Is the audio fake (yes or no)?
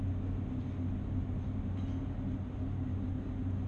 no